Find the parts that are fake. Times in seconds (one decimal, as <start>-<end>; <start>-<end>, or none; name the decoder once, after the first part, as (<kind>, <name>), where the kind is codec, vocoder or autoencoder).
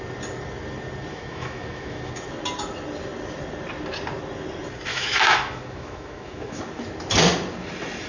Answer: 1.1-2.1 (autoencoder, DAC-VAE); 4.9-6.6